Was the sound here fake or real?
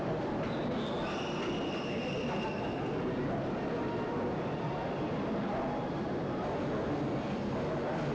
real